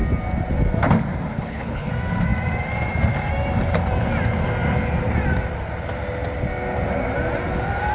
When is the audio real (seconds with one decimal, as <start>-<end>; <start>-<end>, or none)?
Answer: 0.0-1.3; 1.9-7.9